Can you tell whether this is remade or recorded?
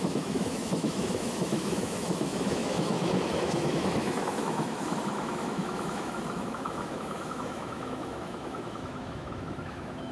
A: remade